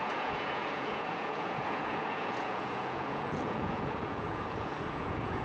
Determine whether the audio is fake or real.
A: fake